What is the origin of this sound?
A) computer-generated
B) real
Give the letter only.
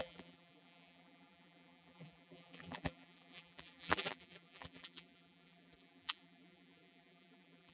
A